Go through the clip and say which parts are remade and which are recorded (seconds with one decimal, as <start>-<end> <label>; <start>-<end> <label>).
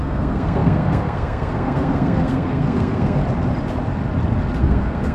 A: 0.0-3.2 remade; 3.2-4.6 recorded; 4.6-5.1 remade